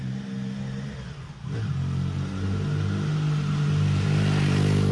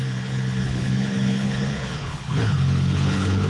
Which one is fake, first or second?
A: second